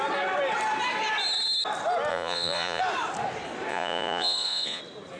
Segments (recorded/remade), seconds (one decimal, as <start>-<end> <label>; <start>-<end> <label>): 0.0-2.1 recorded; 2.1-2.8 remade; 2.8-3.7 recorded; 3.7-4.8 remade; 4.8-5.2 recorded

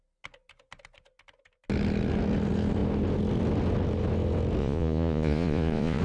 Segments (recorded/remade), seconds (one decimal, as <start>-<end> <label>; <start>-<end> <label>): 0.0-4.6 recorded; 4.6-6.0 remade

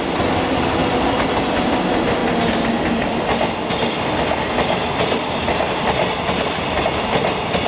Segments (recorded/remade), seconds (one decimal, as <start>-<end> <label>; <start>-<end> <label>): 0.0-7.7 recorded

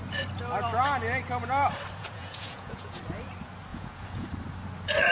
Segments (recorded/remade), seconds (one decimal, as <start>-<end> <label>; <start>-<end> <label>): 0.0-2.0 recorded; 2.0-3.0 remade; 3.0-3.7 recorded; 3.7-4.3 remade; 4.3-5.1 recorded

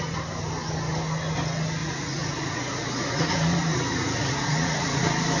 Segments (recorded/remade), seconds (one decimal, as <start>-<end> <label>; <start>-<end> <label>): 0.0-1.8 recorded; 1.8-5.0 remade; 5.0-5.4 recorded

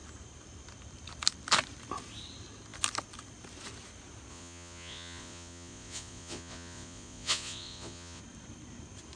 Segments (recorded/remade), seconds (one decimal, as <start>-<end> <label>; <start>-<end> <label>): 0.0-4.3 recorded; 4.3-8.2 remade; 8.2-9.2 recorded

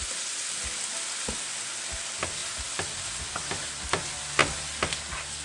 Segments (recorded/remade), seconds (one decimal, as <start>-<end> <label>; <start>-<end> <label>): 0.0-5.4 recorded

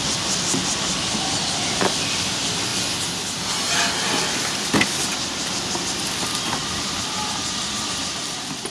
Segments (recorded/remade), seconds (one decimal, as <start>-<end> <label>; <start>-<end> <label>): 0.0-8.7 recorded